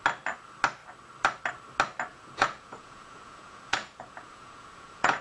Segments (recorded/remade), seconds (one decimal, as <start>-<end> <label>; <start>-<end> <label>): 0.0-2.1 recorded; 2.1-5.2 remade